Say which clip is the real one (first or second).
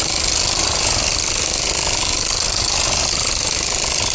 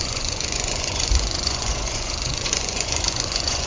first